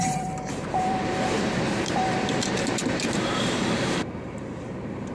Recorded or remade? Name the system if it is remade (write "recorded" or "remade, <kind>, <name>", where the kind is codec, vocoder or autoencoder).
remade, vocoder, BigVGAN v2